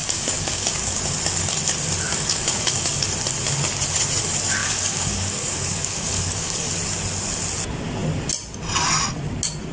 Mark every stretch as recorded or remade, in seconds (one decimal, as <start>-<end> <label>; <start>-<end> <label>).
0.0-1.0 remade; 1.0-2.1 recorded; 2.1-3.0 remade; 3.0-4.6 recorded; 4.6-6.7 remade; 6.7-9.7 recorded